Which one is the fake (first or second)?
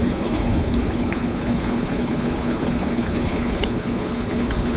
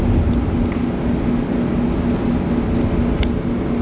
first